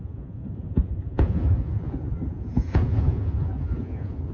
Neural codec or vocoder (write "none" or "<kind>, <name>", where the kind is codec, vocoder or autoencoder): vocoder, Vocos